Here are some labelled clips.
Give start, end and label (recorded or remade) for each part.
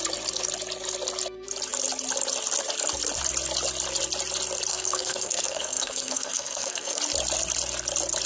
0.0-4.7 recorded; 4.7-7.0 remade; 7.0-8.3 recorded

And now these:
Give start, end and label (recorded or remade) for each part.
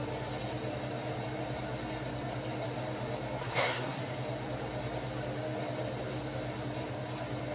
0.0-3.4 recorded; 3.4-4.0 remade; 4.0-7.5 recorded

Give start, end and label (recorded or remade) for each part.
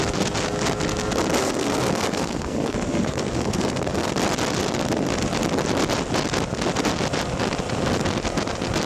0.0-1.4 recorded; 1.4-4.1 remade; 4.1-8.9 recorded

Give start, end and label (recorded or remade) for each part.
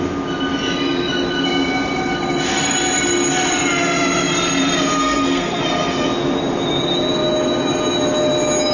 0.0-5.0 recorded; 5.0-5.6 remade; 5.6-8.7 recorded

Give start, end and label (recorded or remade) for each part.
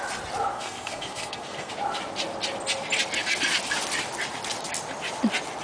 0.0-0.5 recorded; 0.5-1.7 remade; 1.7-5.6 recorded